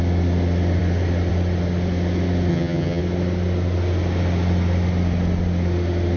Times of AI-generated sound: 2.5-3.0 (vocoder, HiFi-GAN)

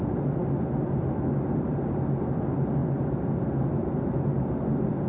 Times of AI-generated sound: none

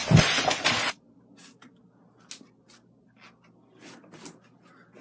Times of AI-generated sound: none

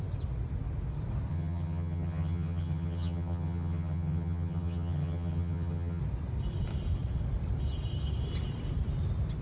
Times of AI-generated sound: 1.3-6.0 (vocoder, HiFi-GAN)

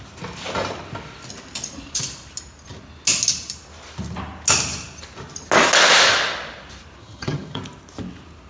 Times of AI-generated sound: 7.0-7.6 (vocoder, HiFi-GAN)

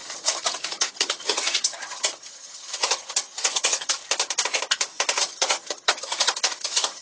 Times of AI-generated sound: 0.0-4.0 (vocoder, HiFi-GAN); 5.2-7.0

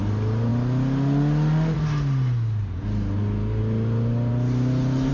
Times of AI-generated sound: none

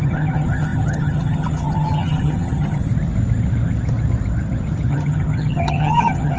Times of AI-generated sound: 0.0-2.8 (vocoder, HiFi-GAN); 4.9-6.4